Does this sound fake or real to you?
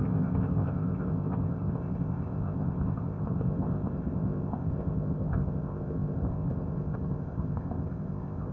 fake